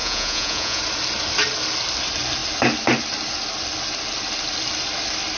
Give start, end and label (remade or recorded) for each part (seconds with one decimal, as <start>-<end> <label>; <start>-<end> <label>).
0.0-0.8 remade; 0.8-5.4 recorded

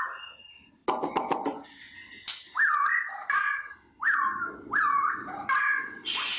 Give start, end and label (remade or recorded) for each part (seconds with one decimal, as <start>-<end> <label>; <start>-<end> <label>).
0.0-6.4 recorded

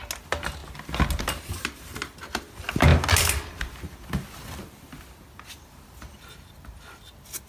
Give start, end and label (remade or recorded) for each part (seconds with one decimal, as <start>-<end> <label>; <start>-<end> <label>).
0.0-7.5 recorded

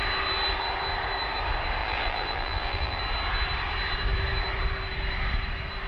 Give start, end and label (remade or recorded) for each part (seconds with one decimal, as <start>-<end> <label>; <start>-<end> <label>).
0.0-1.8 recorded; 1.8-3.0 remade; 3.0-5.9 recorded

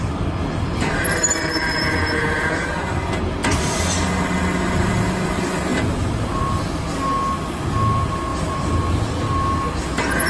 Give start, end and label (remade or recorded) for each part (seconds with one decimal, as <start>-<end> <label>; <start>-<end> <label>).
0.0-10.3 recorded

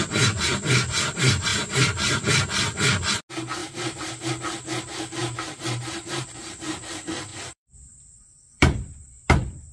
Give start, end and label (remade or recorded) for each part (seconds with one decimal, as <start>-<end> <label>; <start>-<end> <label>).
0.0-3.6 recorded; 3.6-4.3 remade; 4.3-5.2 recorded; 5.2-6.8 remade; 6.8-7.3 recorded; 7.3-9.1 remade; 9.1-9.7 recorded

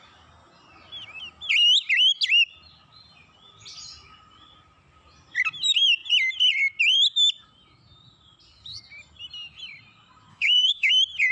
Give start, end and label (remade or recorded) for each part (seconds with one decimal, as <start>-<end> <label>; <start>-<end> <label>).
0.0-10.3 recorded; 10.3-10.9 remade; 10.9-11.3 recorded

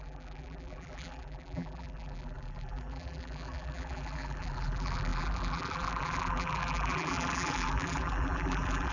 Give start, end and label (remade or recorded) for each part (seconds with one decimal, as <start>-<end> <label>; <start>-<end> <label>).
0.0-8.9 remade